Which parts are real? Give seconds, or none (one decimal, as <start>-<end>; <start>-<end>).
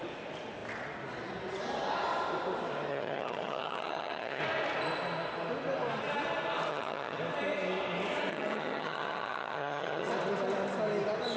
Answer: 0.0-2.9; 4.4-6.7; 7.2-8.3; 10.1-11.4